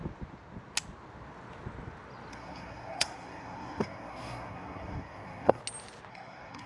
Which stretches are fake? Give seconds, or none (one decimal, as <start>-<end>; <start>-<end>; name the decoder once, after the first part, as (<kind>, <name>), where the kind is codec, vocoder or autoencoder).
2.3-5.6 (codec, SNAC); 6.1-6.7